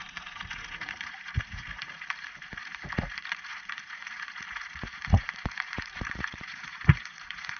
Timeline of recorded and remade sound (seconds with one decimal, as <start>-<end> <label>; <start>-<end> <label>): 0.0-7.6 remade